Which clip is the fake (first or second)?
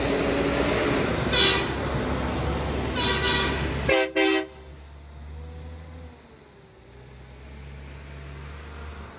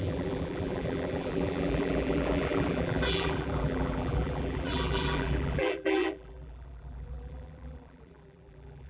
second